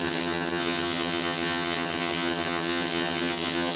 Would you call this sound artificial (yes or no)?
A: yes